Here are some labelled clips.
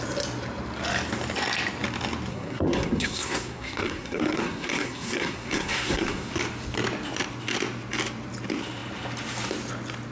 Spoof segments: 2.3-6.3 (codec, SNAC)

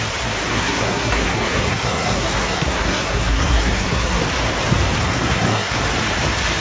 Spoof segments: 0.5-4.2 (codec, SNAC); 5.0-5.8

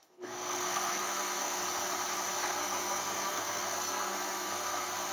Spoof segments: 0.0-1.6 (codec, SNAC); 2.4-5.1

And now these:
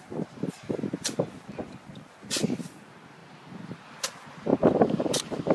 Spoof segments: none

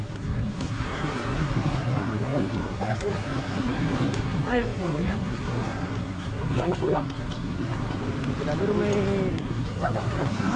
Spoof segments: 0.0-8.0 (codec, SNAC); 9.3-10.6